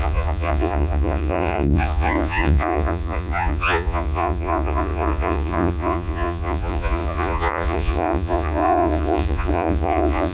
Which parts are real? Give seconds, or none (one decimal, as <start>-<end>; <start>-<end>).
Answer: none